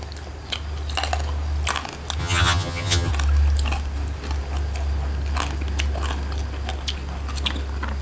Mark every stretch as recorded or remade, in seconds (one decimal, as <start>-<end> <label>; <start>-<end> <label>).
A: 0.0-2.2 recorded; 2.2-3.1 remade; 3.1-8.0 recorded